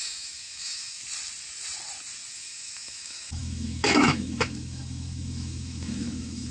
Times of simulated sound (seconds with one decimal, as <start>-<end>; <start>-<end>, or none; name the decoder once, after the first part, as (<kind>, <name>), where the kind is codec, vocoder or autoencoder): 0.0-1.0 (autoencoder, DAC-VAE); 2.3-6.5